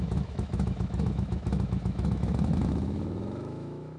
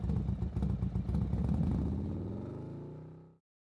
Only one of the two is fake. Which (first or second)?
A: first